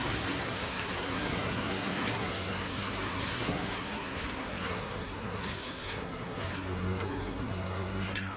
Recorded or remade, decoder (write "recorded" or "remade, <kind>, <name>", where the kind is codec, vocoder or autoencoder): remade, codec, SNAC